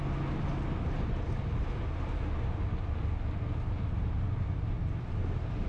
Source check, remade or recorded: recorded